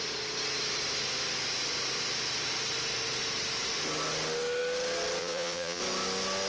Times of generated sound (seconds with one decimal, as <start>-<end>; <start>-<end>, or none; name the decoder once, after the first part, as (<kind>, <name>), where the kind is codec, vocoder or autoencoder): 5.2-5.8 (vocoder, Vocos)